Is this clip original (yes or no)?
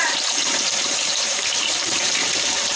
no